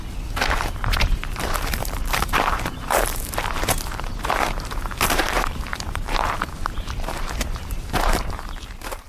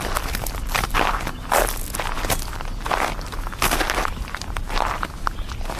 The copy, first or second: first